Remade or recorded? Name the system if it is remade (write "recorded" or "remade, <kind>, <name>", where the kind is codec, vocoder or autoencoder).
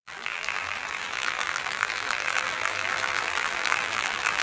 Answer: remade, vocoder, BigVGAN v2